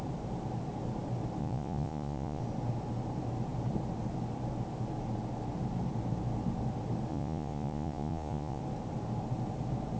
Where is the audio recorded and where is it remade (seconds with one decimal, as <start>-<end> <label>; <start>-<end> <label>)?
0.0-1.4 recorded; 1.4-2.4 remade; 2.4-7.1 recorded; 7.1-8.6 remade; 8.6-10.0 recorded